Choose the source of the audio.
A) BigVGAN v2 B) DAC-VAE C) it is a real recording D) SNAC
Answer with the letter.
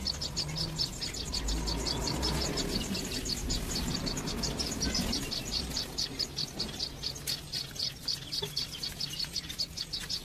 C